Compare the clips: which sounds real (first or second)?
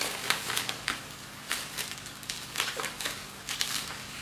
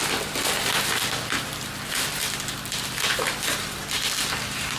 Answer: second